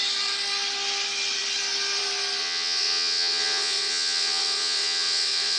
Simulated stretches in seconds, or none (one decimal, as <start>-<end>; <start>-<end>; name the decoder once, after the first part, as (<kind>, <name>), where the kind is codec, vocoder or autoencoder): 2.4-5.6 (vocoder, WaveNeXt)